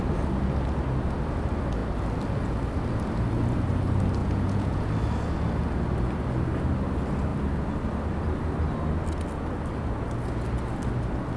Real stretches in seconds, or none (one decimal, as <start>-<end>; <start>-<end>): 0.0-4.2; 4.9-11.4